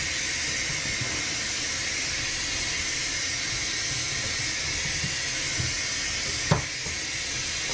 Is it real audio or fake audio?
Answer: real